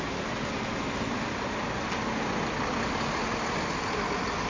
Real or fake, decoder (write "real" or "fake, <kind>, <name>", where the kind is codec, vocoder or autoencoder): real